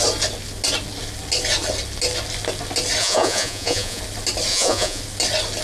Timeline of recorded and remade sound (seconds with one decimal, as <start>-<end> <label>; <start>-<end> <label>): 0.0-3.0 recorded; 3.0-4.0 remade; 4.0-4.5 recorded; 4.5-5.0 remade; 5.0-5.6 recorded